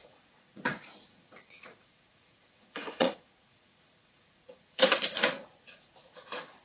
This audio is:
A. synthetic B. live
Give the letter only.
A